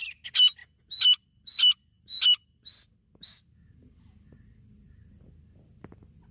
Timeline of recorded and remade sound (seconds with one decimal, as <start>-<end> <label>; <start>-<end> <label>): 0.0-6.3 recorded

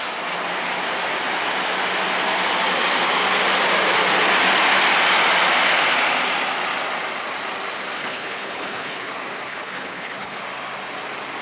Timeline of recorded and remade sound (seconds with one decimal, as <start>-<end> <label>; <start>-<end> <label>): 0.0-8.0 recorded; 8.0-9.1 remade; 9.1-9.5 recorded; 9.5-10.4 remade; 10.4-11.4 recorded

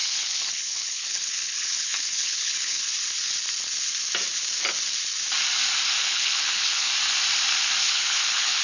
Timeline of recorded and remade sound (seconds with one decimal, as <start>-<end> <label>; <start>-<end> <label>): 0.0-2.8 remade; 2.8-6.0 recorded; 6.0-6.9 remade; 6.9-7.8 recorded; 7.8-8.6 remade

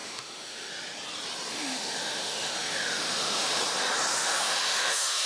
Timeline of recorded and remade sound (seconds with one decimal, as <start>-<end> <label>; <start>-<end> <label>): 0.0-0.7 remade; 0.7-1.5 recorded; 1.5-3.6 remade; 3.6-4.1 recorded; 4.1-5.3 remade

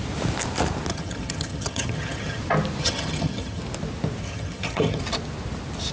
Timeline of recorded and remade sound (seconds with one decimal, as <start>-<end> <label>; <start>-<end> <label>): 0.0-0.9 recorded; 0.9-2.4 remade; 2.4-2.8 recorded; 2.8-3.6 remade; 3.6-4.2 recorded; 4.2-5.0 remade; 5.0-5.9 recorded